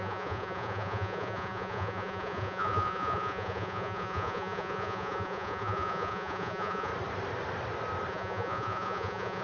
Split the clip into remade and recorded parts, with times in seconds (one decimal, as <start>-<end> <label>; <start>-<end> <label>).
0.0-6.9 remade; 6.9-8.1 recorded; 8.1-9.4 remade